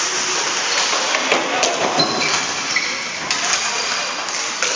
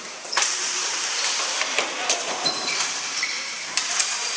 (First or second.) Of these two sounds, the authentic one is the first